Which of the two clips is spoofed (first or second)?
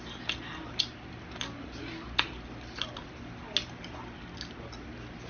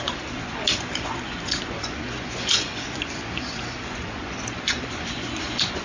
second